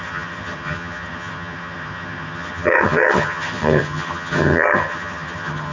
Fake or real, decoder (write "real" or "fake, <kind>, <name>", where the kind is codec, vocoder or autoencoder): fake, vocoder, HiFi-GAN